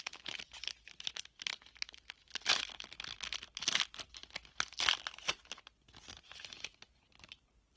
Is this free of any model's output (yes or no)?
yes